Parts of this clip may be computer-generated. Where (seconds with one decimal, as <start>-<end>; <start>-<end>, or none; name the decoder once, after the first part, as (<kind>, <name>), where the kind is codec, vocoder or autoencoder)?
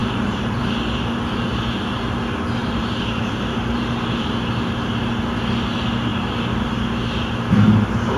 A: 0.0-0.6 (vocoder, BigVGAN v2); 2.6-4.2